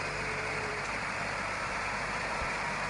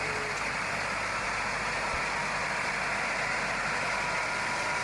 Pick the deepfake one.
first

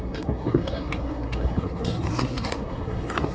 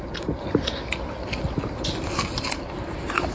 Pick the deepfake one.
first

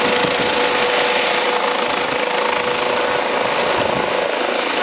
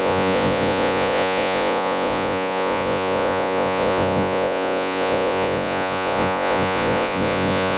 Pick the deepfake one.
second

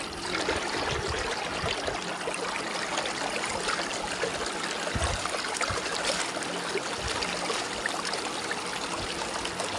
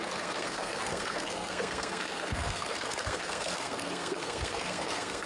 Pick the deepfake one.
second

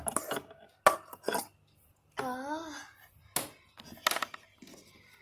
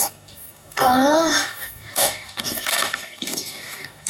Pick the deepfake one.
second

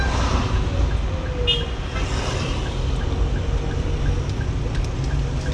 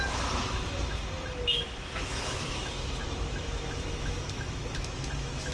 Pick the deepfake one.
second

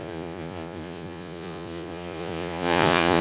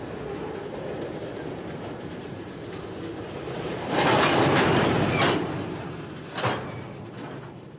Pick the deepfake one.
first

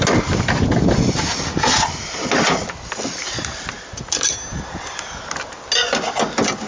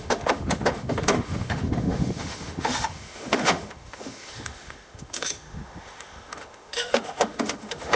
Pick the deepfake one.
second